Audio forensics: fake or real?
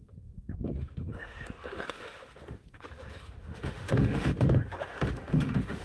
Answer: fake